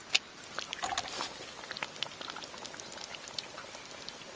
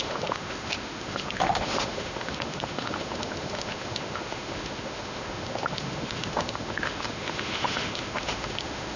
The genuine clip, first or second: first